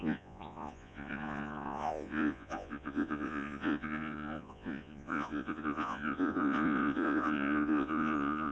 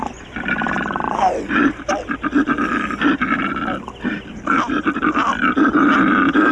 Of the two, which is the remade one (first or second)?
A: first